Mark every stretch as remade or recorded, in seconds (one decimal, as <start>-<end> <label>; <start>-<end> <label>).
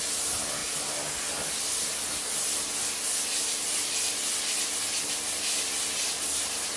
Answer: 0.0-6.8 recorded